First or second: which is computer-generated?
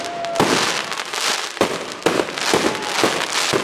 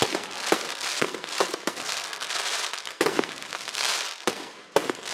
second